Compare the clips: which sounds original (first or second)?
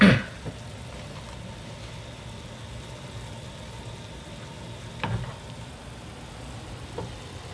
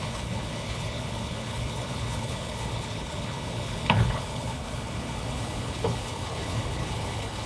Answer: first